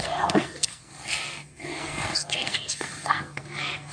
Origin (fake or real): fake